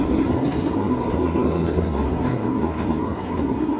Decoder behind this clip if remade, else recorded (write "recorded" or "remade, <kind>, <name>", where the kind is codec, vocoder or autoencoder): remade, codec, SNAC